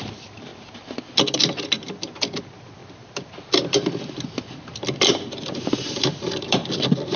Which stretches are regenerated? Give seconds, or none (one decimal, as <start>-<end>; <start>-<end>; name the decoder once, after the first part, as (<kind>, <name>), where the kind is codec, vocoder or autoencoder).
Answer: 0.0-0.5 (vocoder, BigVGAN v2); 2.4-7.2